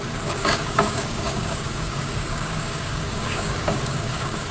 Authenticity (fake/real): fake